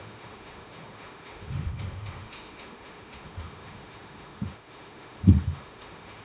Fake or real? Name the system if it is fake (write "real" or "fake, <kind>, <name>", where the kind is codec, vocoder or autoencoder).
fake, autoencoder, DAC-VAE